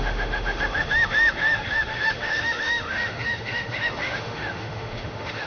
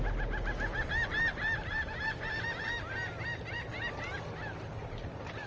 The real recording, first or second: second